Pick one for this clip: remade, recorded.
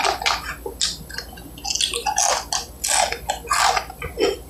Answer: recorded